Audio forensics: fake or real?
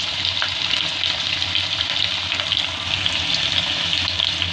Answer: real